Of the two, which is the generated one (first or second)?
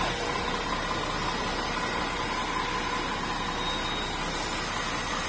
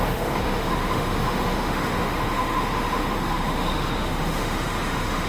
second